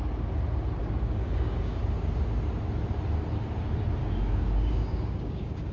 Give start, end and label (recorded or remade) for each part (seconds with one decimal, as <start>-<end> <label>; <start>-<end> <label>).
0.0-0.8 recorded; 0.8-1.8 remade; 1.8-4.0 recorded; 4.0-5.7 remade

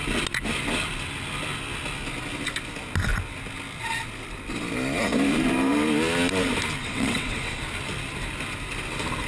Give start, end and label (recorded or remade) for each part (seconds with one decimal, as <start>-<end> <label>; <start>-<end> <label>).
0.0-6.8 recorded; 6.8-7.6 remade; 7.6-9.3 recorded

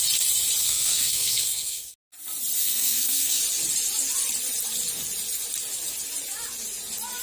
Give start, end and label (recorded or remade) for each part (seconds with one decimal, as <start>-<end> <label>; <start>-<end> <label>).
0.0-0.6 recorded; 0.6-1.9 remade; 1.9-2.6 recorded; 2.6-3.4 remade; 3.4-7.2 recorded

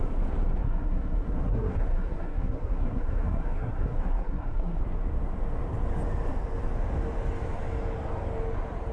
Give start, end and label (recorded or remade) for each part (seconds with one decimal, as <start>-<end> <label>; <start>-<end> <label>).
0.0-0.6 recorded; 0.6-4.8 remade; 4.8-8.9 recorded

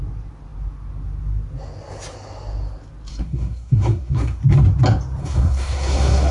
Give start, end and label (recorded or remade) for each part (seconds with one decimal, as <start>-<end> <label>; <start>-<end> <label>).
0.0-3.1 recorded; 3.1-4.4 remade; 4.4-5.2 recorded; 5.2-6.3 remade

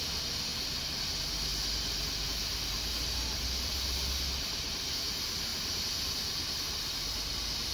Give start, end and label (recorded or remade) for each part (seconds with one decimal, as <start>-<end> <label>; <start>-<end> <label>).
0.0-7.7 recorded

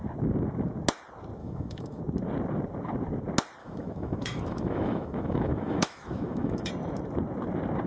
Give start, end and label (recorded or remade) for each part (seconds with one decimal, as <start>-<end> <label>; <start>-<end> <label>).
0.0-1.4 recorded; 1.4-2.0 remade; 2.0-3.6 recorded; 3.6-6.7 remade; 6.7-7.9 recorded

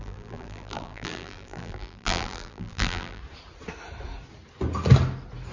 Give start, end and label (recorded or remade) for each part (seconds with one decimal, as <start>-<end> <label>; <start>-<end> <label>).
0.0-3.2 remade; 3.2-5.5 recorded